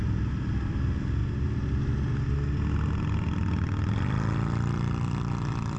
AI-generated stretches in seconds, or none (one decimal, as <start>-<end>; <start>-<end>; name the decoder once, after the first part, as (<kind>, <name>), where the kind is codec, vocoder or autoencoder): 1.2-1.8 (vocoder, BigVGAN v2)